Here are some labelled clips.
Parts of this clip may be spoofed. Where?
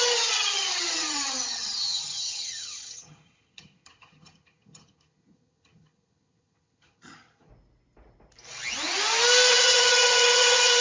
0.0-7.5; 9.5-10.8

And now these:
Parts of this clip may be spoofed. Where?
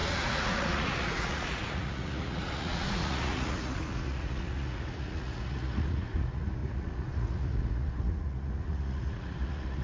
0.0-9.8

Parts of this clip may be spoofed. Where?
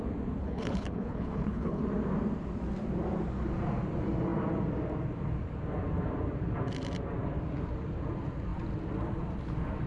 0.4-1.8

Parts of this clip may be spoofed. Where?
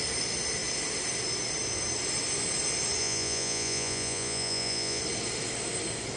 3.0-5.0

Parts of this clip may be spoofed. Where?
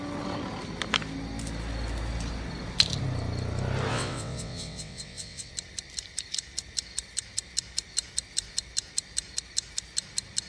3.9-5.5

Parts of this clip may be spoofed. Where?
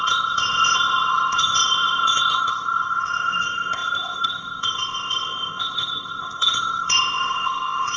0.0-8.0